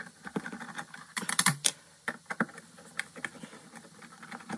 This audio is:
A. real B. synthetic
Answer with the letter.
A